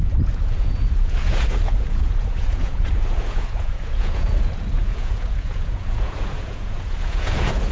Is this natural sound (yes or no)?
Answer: no